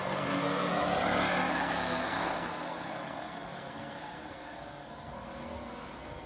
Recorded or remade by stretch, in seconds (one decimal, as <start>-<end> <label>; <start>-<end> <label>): 0.0-0.7 remade; 0.7-1.5 recorded; 1.5-6.3 remade

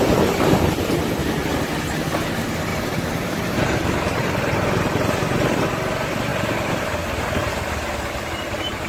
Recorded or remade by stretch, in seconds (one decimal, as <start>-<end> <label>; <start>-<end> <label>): 0.0-2.7 recorded; 2.7-5.4 remade; 5.4-6.3 recorded; 6.3-6.9 remade; 6.9-7.4 recorded; 7.4-8.9 remade

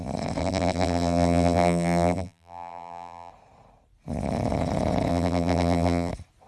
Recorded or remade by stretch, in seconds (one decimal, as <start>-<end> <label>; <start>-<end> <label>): 0.0-0.4 recorded; 0.4-3.3 remade; 3.3-5.1 recorded; 5.1-6.1 remade; 6.1-6.5 recorded

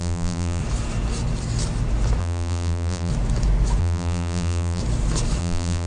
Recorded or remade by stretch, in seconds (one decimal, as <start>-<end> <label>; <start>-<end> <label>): 0.0-0.6 remade; 0.6-2.2 recorded; 2.2-3.1 remade; 3.1-3.8 recorded; 3.8-4.8 remade; 4.8-5.4 recorded; 5.4-5.9 remade

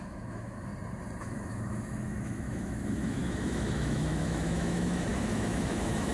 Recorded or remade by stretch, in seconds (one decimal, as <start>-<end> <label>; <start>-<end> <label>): 0.0-0.7 remade; 0.7-1.2 recorded; 1.2-6.1 remade

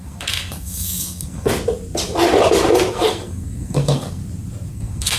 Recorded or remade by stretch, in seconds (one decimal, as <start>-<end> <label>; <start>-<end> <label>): 0.0-1.5 remade; 1.5-2.9 recorded; 2.9-4.2 remade; 4.2-4.7 recorded; 4.7-5.2 remade

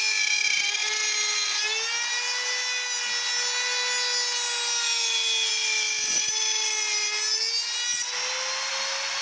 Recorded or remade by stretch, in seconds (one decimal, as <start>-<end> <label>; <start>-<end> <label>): 0.0-9.2 recorded